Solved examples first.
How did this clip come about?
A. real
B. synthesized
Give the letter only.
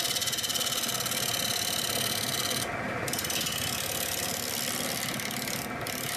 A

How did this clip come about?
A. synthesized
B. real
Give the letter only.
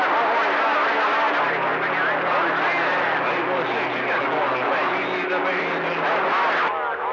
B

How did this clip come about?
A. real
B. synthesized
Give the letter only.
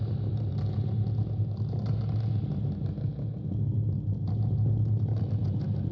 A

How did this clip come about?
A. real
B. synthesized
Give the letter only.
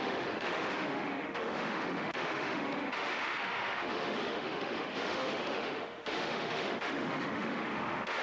B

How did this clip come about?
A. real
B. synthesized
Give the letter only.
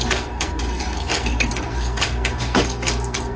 B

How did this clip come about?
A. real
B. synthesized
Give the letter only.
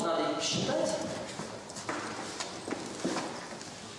A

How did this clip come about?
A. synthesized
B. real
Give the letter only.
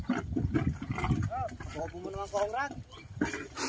B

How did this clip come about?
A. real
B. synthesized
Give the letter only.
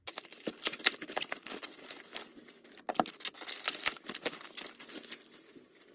A